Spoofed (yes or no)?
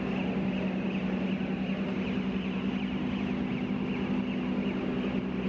no